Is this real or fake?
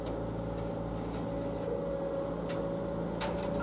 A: real